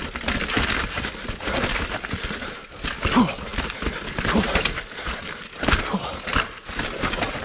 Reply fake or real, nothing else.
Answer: real